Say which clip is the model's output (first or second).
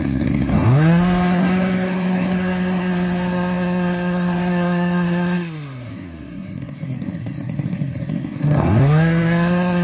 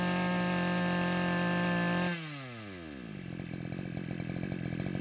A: first